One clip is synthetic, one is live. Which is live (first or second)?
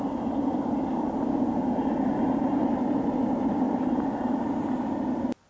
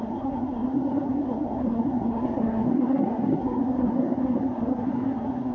first